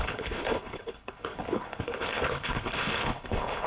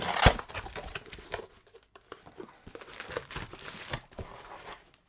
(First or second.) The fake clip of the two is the first